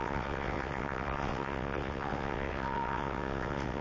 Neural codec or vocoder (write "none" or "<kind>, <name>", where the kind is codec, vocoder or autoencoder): vocoder, WaveNeXt